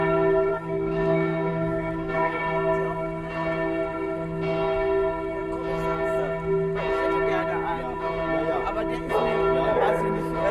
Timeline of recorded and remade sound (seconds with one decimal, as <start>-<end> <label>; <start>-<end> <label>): 0.0-0.5 recorded; 0.5-2.4 remade; 2.4-10.5 recorded